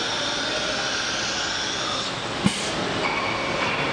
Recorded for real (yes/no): yes